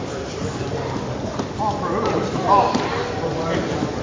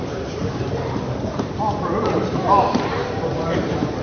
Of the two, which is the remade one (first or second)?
second